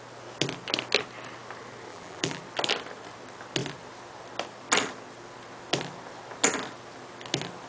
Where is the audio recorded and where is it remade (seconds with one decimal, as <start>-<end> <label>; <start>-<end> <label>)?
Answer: 0.0-1.9 recorded; 1.9-2.4 remade; 2.4-7.7 recorded